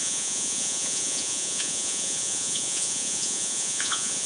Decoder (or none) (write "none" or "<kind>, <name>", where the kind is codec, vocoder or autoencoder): vocoder, Vocos